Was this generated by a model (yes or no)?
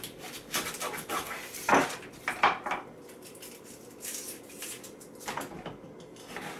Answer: no